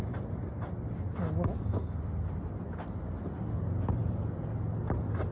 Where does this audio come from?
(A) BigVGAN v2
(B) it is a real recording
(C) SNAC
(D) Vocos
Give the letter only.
B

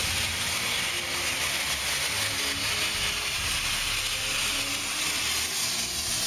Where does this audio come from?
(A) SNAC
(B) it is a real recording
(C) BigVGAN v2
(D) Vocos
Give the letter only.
B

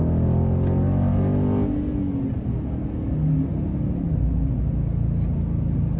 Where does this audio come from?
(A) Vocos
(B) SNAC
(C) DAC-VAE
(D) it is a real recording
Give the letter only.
D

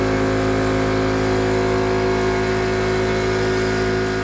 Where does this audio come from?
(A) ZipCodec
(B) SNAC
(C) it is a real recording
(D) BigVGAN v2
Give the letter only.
C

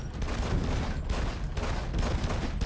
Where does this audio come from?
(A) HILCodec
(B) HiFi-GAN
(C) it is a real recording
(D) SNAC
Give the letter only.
C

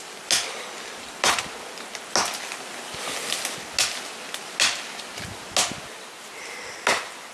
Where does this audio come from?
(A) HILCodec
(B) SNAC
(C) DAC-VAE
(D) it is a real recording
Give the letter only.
D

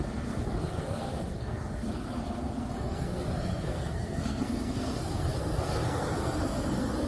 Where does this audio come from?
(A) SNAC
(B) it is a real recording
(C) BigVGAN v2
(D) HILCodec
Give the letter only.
A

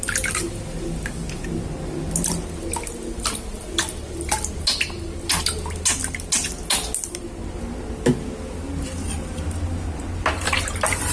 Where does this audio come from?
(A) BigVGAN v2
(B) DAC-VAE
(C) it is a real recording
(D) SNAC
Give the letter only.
C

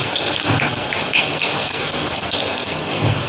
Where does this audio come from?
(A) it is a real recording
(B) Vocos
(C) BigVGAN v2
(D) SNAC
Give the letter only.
D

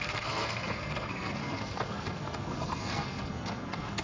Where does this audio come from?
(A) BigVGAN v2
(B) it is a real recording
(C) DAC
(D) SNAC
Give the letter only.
D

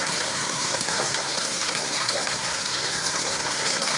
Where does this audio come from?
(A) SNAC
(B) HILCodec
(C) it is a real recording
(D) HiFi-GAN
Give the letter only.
A